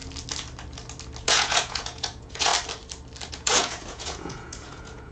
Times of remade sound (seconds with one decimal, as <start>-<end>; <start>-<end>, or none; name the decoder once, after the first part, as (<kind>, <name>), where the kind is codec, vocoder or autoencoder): 1.2-2.5 (vocoder, Vocos); 3.3-5.1